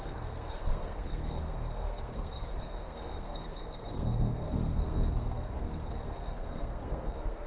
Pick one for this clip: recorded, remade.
remade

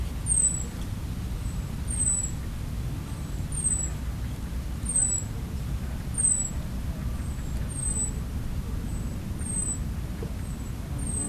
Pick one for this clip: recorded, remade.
recorded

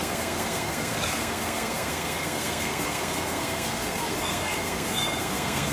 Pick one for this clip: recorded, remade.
remade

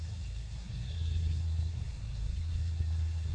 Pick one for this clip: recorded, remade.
remade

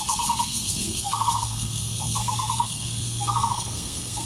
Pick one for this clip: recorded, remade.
remade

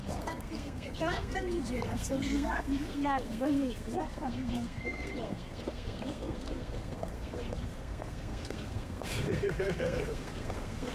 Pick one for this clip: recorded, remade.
remade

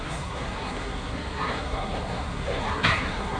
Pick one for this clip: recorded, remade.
remade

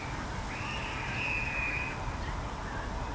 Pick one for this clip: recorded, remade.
recorded